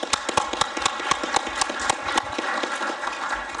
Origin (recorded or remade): recorded